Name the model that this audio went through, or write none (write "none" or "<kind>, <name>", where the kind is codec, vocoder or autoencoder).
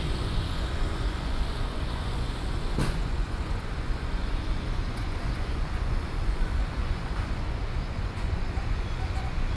vocoder, Vocos